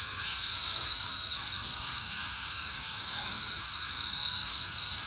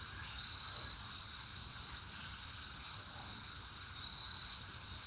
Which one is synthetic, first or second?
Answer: first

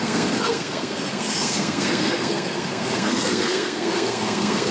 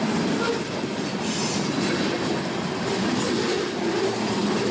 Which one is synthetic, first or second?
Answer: first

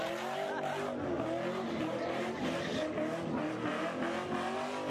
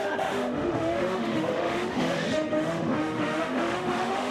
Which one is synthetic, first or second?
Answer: second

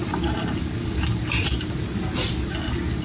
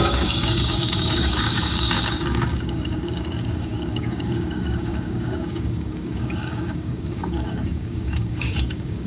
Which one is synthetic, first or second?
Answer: second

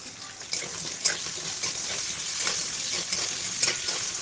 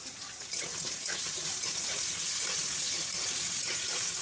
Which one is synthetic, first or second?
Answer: second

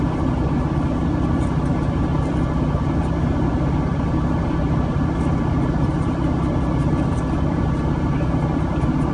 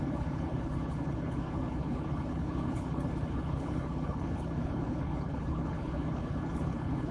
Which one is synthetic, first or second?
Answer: second